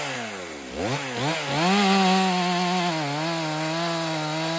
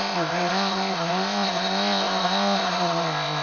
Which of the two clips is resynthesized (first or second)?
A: second